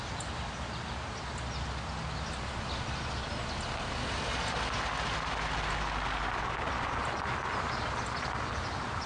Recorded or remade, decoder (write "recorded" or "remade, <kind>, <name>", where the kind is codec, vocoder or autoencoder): recorded